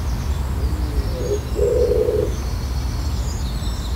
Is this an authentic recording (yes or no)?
yes